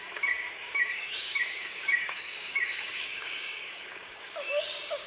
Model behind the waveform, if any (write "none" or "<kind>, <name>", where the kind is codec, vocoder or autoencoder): codec, DAC